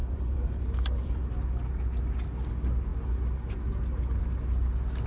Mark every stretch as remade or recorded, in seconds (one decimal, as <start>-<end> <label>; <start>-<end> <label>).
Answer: 0.0-1.2 remade; 1.2-5.1 recorded